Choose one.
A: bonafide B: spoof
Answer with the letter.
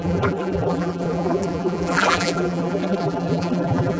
B